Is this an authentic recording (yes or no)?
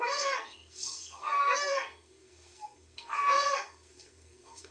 no